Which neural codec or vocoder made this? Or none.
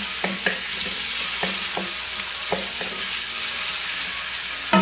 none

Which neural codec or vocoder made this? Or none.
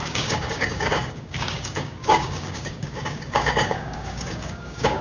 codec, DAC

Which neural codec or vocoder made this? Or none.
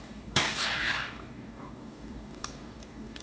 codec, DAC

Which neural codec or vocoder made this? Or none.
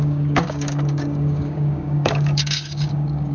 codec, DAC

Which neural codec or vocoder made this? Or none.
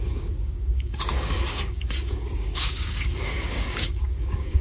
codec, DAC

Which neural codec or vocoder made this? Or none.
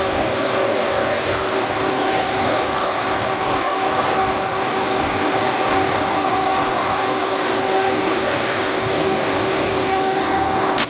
codec, DAC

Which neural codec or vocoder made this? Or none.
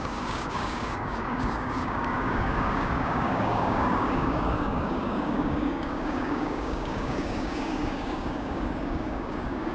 codec, DAC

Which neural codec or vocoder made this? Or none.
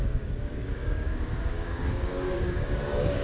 codec, DAC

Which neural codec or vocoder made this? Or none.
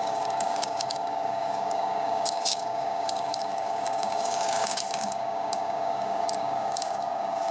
codec, DAC